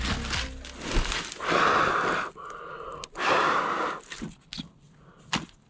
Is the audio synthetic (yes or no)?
no